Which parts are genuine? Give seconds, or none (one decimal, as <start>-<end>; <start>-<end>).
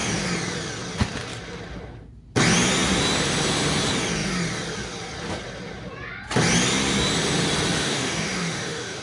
0.0-7.8